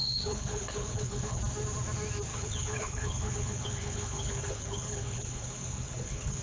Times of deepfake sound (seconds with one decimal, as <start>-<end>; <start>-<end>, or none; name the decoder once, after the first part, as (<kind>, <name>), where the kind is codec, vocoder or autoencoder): 0.0-1.4 (codec, HILCodec); 2.3-6.4